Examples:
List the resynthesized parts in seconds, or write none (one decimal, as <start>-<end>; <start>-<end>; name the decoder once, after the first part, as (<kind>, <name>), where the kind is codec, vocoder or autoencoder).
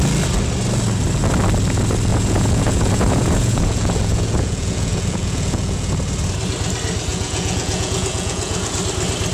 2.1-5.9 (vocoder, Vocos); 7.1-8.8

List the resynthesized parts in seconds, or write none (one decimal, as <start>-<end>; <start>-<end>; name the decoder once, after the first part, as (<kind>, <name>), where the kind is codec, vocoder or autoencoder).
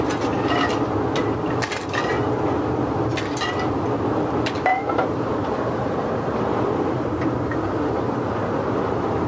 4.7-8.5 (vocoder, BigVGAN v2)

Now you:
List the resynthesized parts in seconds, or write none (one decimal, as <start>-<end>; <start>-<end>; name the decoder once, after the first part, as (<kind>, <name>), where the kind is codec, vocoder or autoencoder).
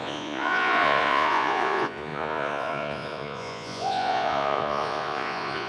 0.0-5.7 (vocoder, Vocos)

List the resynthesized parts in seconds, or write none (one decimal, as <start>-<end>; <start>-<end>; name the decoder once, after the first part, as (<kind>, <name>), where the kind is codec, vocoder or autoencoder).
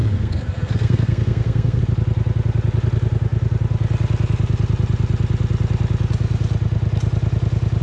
0.0-1.8 (codec, SNAC)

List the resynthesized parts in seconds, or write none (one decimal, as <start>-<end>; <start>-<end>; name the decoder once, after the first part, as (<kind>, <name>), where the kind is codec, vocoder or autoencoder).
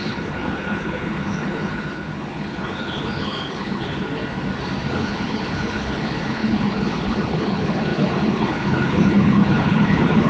0.0-4.2 (codec, HILCodec); 4.9-10.3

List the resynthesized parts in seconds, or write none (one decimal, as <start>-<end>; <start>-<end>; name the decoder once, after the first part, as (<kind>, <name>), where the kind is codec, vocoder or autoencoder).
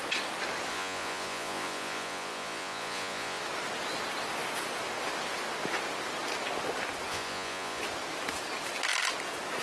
0.7-3.4 (vocoder, Vocos); 7.1-7.8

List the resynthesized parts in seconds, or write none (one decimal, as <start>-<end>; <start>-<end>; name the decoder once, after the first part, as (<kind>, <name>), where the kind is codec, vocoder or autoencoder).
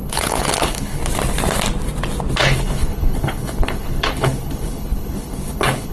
0.0-1.0 (codec, HILCodec); 2.4-5.9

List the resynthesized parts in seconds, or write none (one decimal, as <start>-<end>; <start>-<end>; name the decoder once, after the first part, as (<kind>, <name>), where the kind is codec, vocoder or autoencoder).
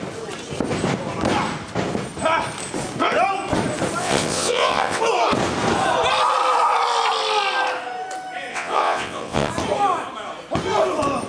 4.0-5.0 (vocoder, WaveNeXt); 8.5-9.5